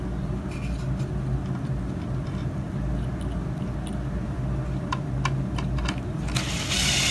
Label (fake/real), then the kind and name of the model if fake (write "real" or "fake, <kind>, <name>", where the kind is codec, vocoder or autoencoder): real